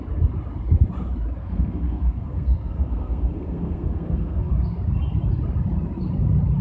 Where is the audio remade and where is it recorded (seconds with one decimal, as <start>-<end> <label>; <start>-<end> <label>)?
0.0-1.4 recorded; 1.4-4.5 remade; 4.5-6.6 recorded